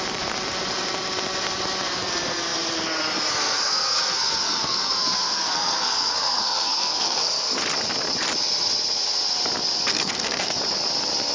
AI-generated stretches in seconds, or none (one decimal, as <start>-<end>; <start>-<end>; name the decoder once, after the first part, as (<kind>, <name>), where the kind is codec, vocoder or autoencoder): 3.4-7.6 (codec, SNAC); 9.9-10.6

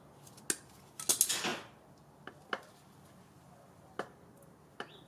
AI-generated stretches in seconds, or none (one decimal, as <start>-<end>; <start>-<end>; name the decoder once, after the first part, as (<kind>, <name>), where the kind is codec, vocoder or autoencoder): none

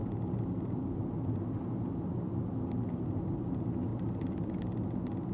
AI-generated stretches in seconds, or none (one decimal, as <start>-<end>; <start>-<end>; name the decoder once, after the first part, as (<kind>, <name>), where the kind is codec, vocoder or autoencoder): none